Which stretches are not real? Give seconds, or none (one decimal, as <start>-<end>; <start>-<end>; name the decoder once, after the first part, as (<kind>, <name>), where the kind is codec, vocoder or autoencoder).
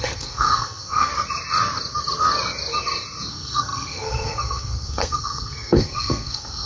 0.0-1.1 (codec, SNAC); 3.3-6.7